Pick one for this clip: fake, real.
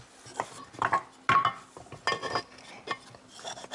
real